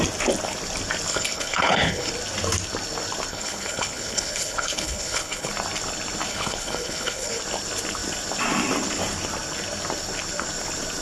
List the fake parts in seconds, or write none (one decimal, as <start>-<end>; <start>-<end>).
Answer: 1.1-2.1; 3.3-5.5; 6.3-7.4